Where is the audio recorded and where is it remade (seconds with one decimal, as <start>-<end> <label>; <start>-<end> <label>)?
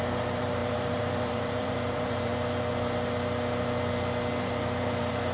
0.0-2.3 remade; 2.3-4.4 recorded; 4.4-5.3 remade